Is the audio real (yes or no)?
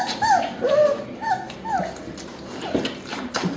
yes